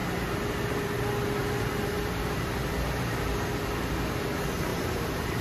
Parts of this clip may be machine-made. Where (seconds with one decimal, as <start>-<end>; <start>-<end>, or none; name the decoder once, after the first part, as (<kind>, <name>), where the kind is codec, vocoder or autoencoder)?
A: 1.4-3.3 (vocoder, BigVGAN v2); 4.7-5.4